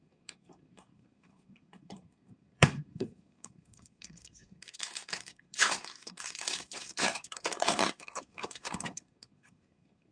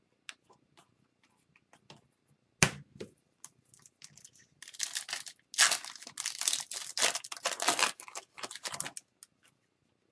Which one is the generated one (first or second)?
first